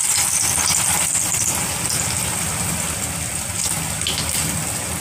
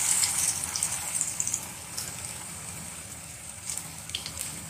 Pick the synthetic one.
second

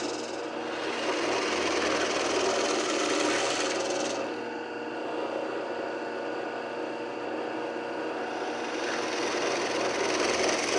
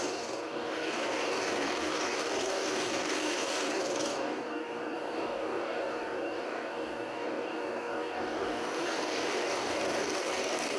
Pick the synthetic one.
second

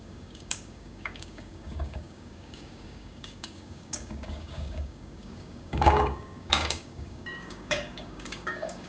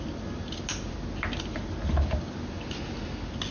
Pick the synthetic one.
first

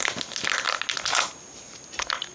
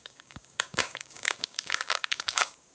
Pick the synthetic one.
second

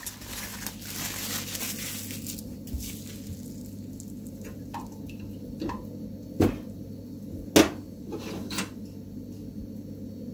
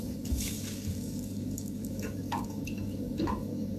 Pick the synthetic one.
second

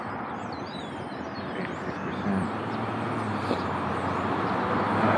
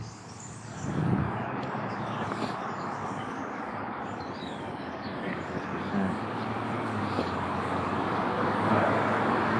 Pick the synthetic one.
second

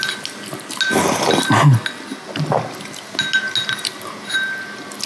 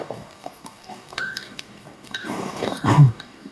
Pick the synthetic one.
second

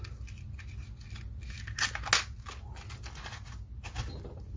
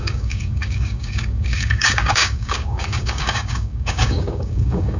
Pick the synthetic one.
second